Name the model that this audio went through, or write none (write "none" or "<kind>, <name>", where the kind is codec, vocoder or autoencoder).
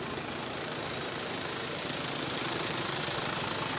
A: vocoder, BigVGAN v2